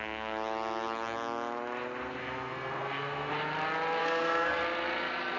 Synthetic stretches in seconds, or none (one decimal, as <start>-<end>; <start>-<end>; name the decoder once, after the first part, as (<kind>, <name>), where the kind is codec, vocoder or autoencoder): 2.2-3.3 (codec, SNAC); 4.0-4.6